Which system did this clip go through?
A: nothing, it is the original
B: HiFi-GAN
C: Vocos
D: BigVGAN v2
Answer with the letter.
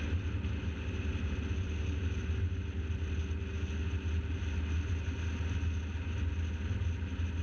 A